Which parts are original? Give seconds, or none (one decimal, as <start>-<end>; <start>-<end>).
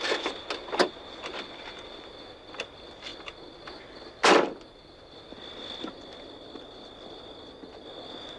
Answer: 0.0-8.4